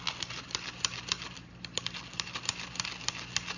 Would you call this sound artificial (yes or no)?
no